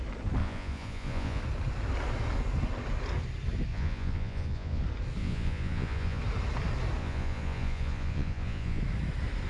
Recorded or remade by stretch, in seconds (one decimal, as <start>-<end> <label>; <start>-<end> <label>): 0.0-0.4 recorded; 0.4-1.4 remade; 1.4-3.7 recorded; 3.7-4.8 remade; 4.8-5.2 recorded; 5.2-6.2 remade; 6.2-7.0 recorded; 7.0-8.8 remade; 8.8-9.5 recorded

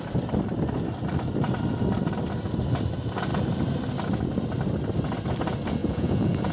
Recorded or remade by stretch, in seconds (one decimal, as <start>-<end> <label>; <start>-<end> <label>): 0.0-5.8 recorded; 5.8-6.5 remade

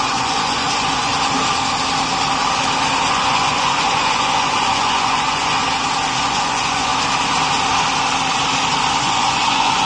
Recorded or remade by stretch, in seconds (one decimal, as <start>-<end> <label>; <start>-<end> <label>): 0.0-1.1 remade; 1.1-3.1 recorded; 3.1-5.6 remade; 5.6-6.2 recorded; 6.2-6.9 remade; 6.9-9.0 recorded; 9.0-9.8 remade

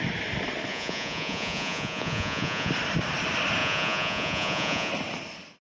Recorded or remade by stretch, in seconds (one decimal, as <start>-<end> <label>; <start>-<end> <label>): 0.0-0.7 recorded; 0.7-2.7 remade; 2.7-3.6 recorded; 3.6-4.9 remade; 4.9-5.7 recorded

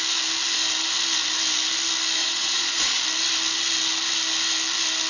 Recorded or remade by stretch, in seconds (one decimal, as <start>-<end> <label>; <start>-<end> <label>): 0.0-2.2 recorded; 2.2-3.0 remade; 3.0-5.1 recorded

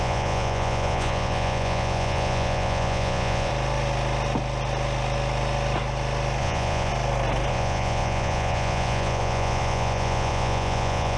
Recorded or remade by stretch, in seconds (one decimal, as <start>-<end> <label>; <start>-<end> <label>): 0.0-3.5 remade; 3.5-6.4 recorded; 6.4-6.9 remade; 6.9-7.5 recorded; 7.5-11.2 remade

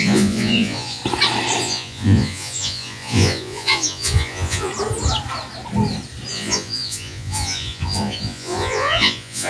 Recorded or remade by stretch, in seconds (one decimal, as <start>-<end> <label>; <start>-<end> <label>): 0.0-1.0 remade; 1.0-1.6 recorded; 1.6-4.7 remade; 4.7-6.3 recorded; 6.3-9.5 remade

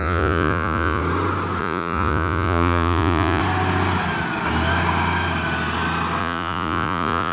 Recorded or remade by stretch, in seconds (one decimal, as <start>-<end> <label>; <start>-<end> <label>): 0.0-1.0 remade; 1.0-1.6 recorded; 1.6-3.4 remade; 3.4-6.2 recorded; 6.2-7.3 remade